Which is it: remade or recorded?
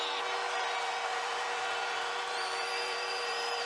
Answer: remade